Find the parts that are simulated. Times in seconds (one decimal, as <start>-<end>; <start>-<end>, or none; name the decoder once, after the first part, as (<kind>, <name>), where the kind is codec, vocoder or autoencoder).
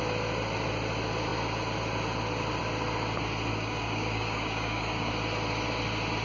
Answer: 3.5-5.1 (codec, DAC)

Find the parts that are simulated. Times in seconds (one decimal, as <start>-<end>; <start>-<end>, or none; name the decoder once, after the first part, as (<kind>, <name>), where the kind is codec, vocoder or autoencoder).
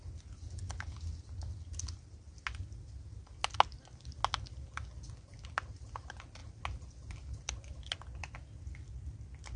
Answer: none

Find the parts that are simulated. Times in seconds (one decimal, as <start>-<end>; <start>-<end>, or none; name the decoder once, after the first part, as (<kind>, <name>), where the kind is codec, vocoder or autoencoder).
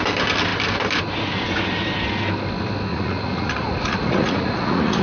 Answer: 2.9-5.0 (vocoder, Vocos)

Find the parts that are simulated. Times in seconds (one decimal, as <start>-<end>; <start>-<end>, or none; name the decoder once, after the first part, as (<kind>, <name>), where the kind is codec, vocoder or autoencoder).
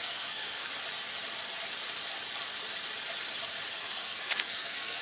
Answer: 0.0-0.7 (codec, SNAC); 3.7-5.0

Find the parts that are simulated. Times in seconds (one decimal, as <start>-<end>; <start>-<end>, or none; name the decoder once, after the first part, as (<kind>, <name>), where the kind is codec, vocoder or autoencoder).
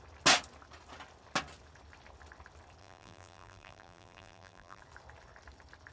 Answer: 2.8-4.8 (vocoder, BigVGAN v2)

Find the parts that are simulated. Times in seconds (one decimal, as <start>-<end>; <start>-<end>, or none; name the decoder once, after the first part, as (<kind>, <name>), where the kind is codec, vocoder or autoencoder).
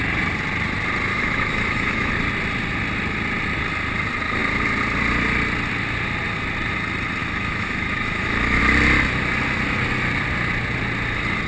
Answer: 1.1-2.1 (autoencoder, DAC-VAE); 7.2-8.6